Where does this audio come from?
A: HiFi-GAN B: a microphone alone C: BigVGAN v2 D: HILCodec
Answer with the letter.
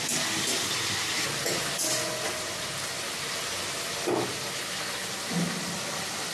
B